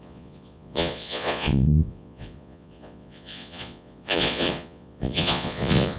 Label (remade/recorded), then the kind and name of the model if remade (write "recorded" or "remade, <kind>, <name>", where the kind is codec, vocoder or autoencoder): remade, vocoder, Vocos